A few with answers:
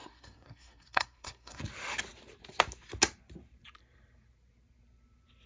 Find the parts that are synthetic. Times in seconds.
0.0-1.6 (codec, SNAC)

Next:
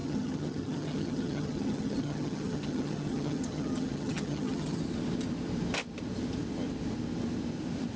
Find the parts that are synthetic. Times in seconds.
0.0-4.8 (vocoder, HiFi-GAN)